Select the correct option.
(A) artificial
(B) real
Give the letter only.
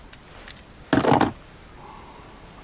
B